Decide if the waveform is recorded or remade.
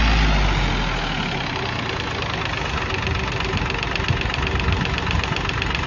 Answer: recorded